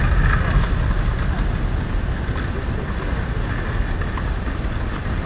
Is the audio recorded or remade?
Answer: recorded